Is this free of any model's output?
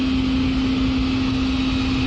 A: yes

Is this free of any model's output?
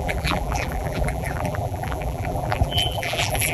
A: no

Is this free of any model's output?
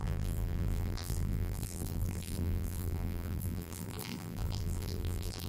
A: no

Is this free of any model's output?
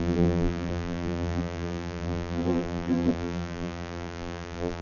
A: no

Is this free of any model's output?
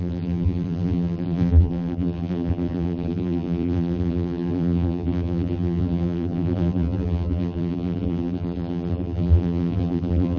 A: no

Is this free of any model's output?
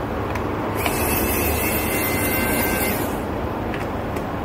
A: yes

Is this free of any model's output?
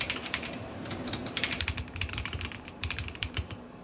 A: no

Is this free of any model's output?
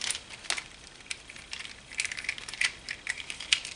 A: yes